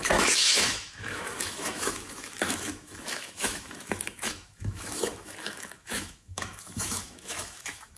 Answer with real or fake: fake